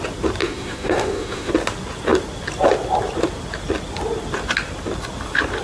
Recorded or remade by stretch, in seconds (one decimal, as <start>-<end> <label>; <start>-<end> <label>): 0.0-0.4 recorded; 0.4-1.5 remade; 1.5-5.6 recorded